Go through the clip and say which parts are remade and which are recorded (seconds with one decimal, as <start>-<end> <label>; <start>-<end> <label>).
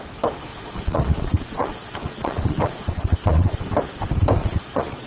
0.0-0.5 recorded; 0.5-3.6 remade; 3.6-4.4 recorded; 4.4-5.1 remade